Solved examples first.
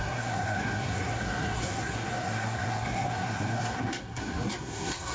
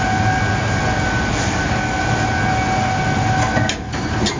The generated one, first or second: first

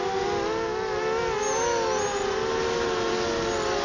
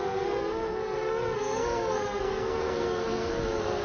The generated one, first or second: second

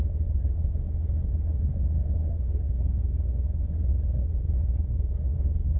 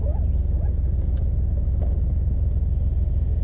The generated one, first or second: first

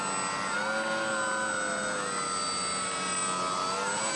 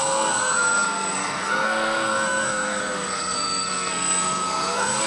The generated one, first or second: second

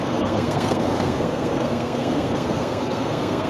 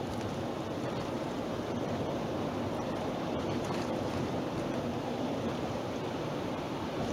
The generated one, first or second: first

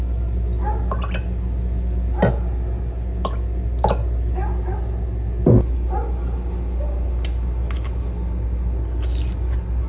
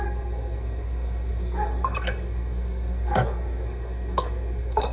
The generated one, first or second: second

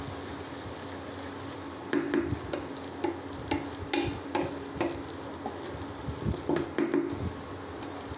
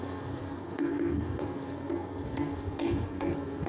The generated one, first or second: second